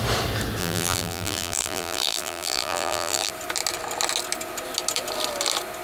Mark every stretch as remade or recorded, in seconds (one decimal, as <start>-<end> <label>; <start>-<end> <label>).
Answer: 0.0-0.6 recorded; 0.6-3.3 remade; 3.3-5.8 recorded